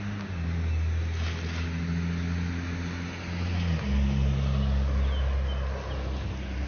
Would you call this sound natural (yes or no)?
yes